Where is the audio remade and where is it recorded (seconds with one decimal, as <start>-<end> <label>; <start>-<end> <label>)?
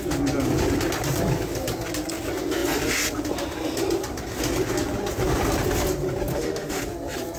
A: 0.0-6.3 recorded; 6.3-6.8 remade; 6.8-7.4 recorded